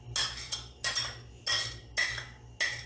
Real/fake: real